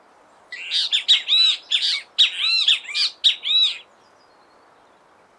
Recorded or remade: recorded